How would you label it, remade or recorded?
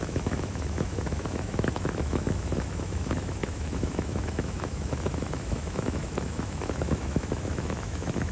remade